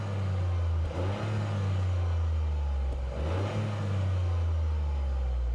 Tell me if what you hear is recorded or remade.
recorded